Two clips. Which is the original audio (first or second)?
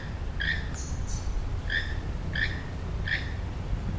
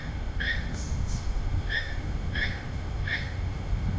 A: first